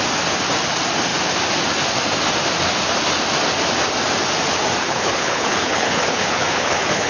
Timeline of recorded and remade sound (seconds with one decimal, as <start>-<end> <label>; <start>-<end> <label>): 0.0-4.8 recorded; 4.8-7.1 remade